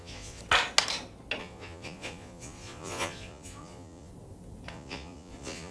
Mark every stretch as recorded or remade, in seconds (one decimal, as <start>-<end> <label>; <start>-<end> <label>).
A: 0.0-0.4 remade; 0.4-1.4 recorded; 1.4-4.1 remade; 4.1-4.7 recorded; 4.7-5.7 remade

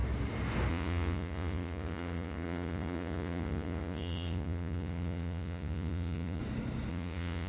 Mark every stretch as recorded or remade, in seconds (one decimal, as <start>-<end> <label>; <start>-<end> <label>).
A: 0.0-0.7 recorded; 0.7-6.4 remade; 6.4-6.9 recorded; 6.9-7.5 remade

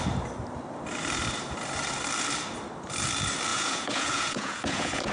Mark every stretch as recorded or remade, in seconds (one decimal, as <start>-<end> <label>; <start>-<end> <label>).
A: 0.0-3.5 recorded; 3.5-5.1 remade

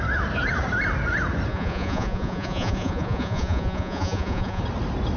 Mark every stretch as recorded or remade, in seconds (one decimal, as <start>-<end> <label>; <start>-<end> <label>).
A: 0.0-1.5 recorded; 1.5-4.6 remade; 4.6-5.2 recorded

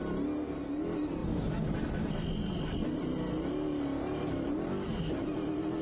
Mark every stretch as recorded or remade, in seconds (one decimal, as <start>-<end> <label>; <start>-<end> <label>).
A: 0.0-5.8 recorded

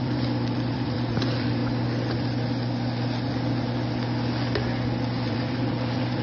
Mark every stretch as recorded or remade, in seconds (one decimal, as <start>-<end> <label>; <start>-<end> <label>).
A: 0.0-1.6 remade; 1.6-5.3 recorded; 5.3-6.2 remade

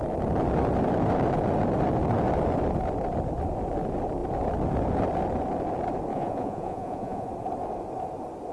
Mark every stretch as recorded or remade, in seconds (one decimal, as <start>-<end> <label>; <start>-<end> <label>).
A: 0.0-6.1 recorded; 6.1-7.3 remade; 7.3-8.5 recorded